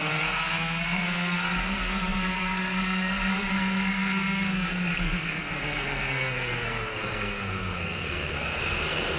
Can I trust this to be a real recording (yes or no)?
no